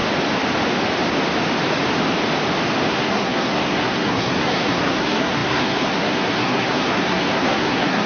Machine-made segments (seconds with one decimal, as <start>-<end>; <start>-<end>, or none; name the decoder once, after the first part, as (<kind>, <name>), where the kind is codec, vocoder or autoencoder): 2.9-8.1 (codec, SNAC)